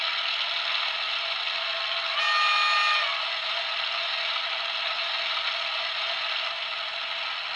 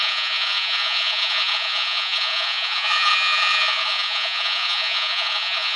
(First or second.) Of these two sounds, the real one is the first